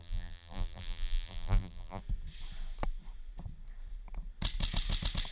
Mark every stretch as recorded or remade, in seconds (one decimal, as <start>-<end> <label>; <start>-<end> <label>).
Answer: 0.0-2.0 remade; 2.0-5.3 recorded